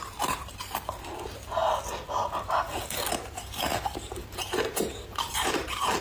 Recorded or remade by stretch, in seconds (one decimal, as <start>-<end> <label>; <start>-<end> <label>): 0.0-1.6 remade; 1.6-3.1 recorded; 3.1-6.0 remade

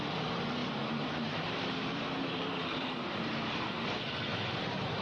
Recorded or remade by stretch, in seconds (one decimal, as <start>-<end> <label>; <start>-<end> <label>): 0.0-0.6 recorded; 0.6-3.6 remade; 3.6-4.3 recorded; 4.3-5.0 remade

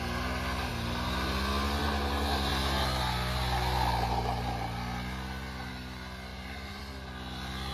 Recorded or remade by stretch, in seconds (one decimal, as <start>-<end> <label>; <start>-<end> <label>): 0.0-6.3 recorded; 6.3-6.8 remade; 6.8-7.7 recorded

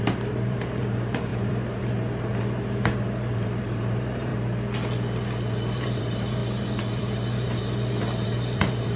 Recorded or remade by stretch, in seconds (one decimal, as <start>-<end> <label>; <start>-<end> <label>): 0.0-4.3 remade; 4.3-5.5 recorded; 5.5-9.0 remade

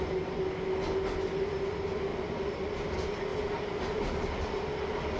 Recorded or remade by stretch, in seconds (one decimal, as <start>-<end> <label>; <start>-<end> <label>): 0.0-2.1 recorded; 2.1-2.6 remade; 2.6-3.3 recorded; 3.3-4.4 remade; 4.4-5.2 recorded

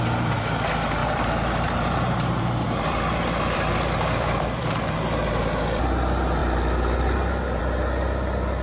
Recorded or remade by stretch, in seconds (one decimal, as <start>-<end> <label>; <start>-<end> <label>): 0.0-1.0 recorded; 1.0-5.6 remade; 5.6-8.6 recorded

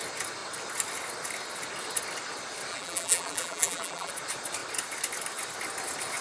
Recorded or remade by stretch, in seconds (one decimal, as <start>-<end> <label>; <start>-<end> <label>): 0.0-2.7 recorded; 2.7-4.1 remade; 4.1-6.2 recorded

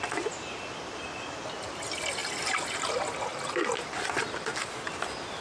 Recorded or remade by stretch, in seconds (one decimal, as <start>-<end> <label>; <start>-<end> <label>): 0.0-5.4 recorded